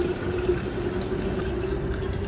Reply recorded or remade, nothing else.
recorded